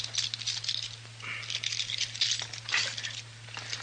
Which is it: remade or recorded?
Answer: recorded